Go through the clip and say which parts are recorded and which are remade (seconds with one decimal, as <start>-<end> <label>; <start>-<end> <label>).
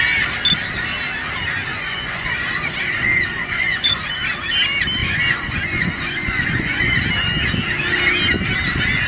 0.0-1.7 recorded; 1.7-4.1 remade; 4.1-5.0 recorded; 5.0-7.0 remade; 7.0-9.1 recorded